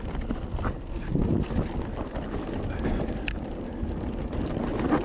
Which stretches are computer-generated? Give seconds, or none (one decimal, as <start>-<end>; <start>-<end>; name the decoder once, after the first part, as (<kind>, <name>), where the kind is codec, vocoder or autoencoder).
none